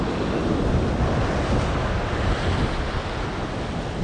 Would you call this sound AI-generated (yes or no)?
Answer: no